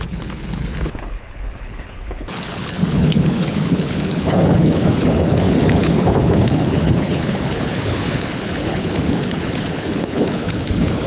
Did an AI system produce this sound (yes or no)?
yes